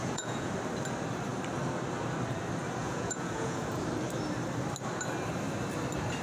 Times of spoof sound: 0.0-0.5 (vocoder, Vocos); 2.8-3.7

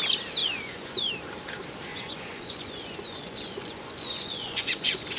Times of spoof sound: 0.4-1.1 (vocoder, Vocos); 1.9-5.2

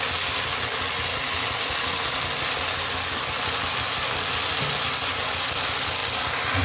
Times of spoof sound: none

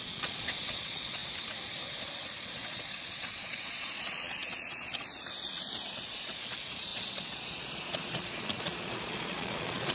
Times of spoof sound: 0.0-1.2 (vocoder, Vocos); 2.4-9.9

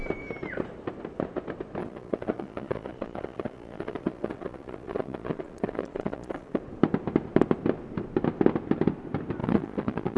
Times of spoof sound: 1.8-6.6 (vocoder, Vocos); 9.4-10.2

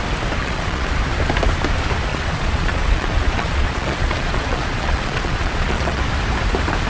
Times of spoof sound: 0.4-0.9 (vocoder, Vocos); 2.1-6.0